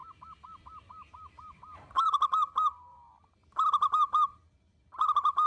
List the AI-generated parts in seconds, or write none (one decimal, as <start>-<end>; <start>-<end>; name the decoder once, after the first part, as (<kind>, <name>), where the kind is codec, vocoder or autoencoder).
none